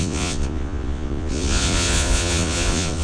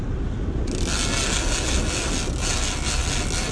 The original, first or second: second